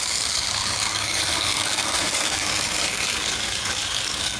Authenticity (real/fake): fake